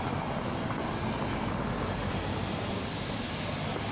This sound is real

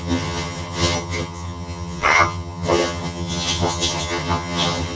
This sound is fake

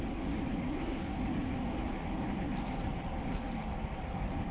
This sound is real